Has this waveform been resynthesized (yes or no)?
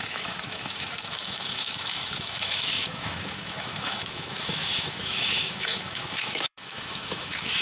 yes